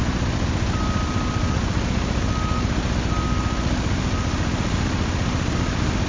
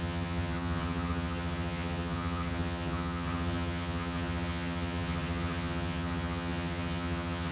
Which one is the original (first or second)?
first